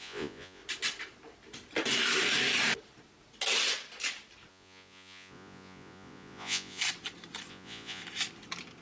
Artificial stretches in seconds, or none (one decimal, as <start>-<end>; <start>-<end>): 0.0-0.6; 4.5-6.8; 7.5-8.0

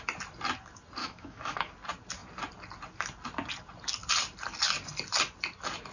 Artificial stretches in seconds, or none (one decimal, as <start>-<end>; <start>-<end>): 1.0-1.7

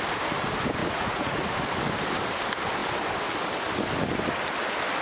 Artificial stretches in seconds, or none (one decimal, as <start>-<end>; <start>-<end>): 0.8-1.5

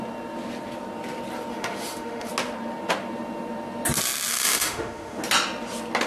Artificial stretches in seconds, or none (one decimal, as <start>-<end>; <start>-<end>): 1.5-2.3; 4.3-5.2

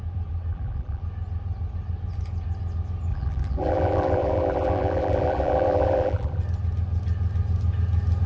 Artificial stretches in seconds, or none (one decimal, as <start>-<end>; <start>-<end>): 0.5-1.0; 3.1-6.4

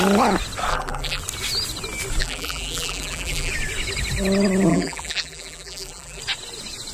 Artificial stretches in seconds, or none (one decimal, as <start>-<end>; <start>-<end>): 0.7-1.2; 2.2-3.5; 4.7-6.2